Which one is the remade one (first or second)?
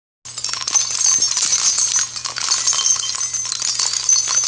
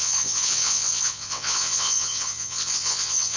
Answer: second